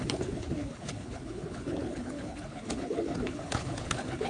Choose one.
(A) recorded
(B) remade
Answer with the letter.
B